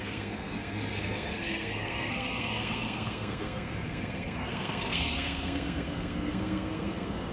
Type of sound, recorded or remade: remade